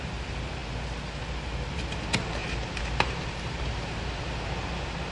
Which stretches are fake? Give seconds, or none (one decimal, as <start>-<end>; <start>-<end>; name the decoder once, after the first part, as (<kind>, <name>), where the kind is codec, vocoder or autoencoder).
2.4-3.8 (vocoder, BigVGAN v2)

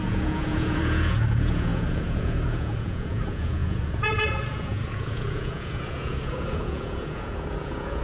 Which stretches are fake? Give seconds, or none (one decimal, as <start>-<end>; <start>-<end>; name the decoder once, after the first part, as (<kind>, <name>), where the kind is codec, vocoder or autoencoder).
0.0-8.0 (vocoder, Vocos)

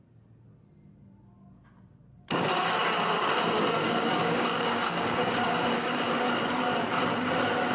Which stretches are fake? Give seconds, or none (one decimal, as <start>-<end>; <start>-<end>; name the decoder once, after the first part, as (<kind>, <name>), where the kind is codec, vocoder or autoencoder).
3.8-6.0 (codec, DAC)

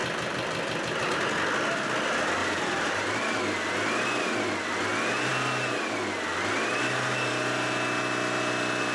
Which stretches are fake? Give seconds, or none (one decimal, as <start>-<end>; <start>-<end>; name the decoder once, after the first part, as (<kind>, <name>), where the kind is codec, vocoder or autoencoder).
2.4-3.4 (vocoder, BigVGAN v2)